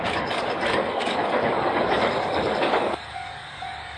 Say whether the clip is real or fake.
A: fake